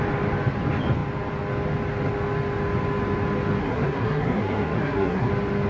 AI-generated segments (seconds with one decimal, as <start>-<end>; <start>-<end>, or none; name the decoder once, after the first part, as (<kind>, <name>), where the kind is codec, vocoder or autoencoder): 3.6-5.3 (codec, SNAC)